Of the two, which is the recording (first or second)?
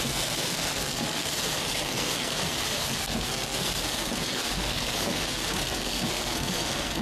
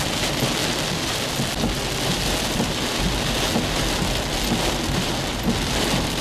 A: second